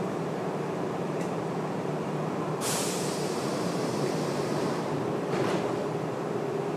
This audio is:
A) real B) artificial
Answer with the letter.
B